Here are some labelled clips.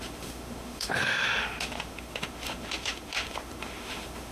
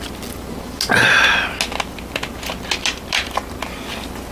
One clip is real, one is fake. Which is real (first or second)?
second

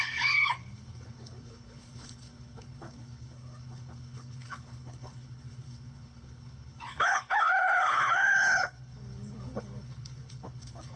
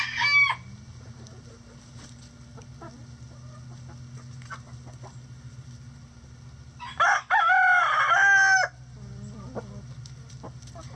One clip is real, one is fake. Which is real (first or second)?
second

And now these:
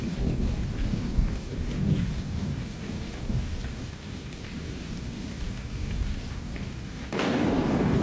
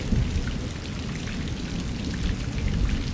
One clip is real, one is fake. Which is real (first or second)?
second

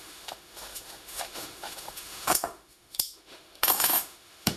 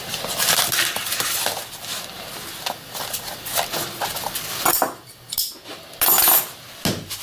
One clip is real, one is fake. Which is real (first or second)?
second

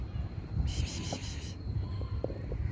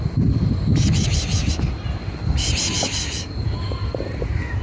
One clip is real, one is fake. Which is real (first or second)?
second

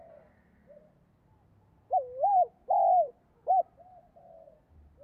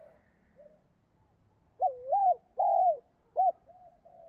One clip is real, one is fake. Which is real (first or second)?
first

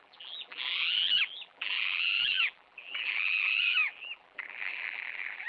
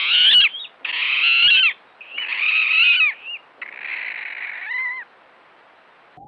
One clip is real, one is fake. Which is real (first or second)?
second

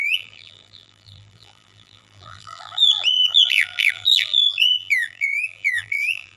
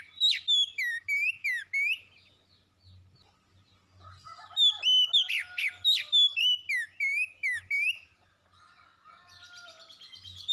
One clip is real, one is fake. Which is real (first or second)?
second